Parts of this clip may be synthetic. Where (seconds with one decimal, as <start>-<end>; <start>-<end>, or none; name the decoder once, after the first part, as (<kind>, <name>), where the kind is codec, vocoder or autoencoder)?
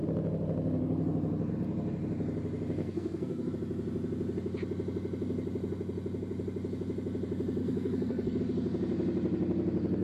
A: 2.8-3.5 (codec, SNAC); 7.6-8.4